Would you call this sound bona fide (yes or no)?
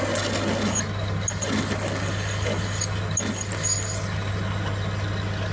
yes